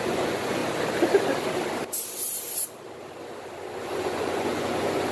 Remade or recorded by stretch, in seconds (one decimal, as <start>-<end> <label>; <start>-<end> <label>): 0.0-0.6 remade; 0.6-3.7 recorded; 3.7-5.1 remade